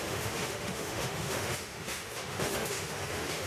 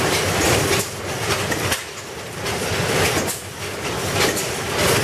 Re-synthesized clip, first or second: first